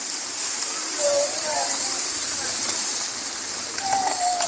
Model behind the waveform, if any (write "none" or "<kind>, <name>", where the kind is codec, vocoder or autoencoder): none